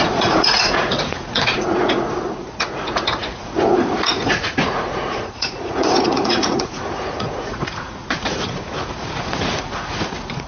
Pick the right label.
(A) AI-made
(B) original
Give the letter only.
A